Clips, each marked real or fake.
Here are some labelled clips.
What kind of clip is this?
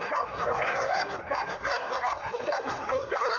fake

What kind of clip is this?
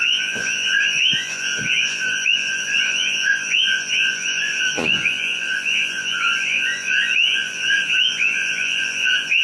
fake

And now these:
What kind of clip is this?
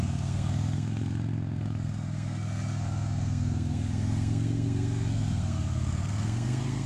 fake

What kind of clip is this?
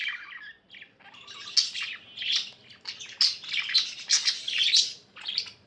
real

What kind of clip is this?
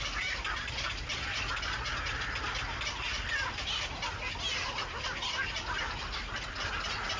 real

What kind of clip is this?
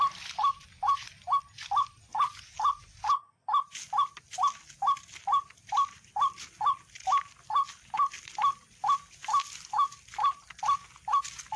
real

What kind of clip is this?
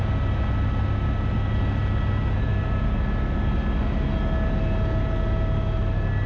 real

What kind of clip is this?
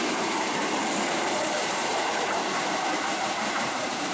fake